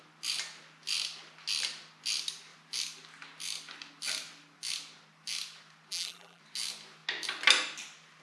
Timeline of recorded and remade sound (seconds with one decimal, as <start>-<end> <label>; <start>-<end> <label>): 0.0-5.9 recorded; 5.9-6.4 remade; 6.4-8.2 recorded